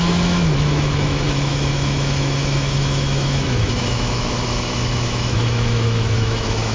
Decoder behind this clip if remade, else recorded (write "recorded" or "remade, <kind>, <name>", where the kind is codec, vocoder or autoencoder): remade, autoencoder, DAC-VAE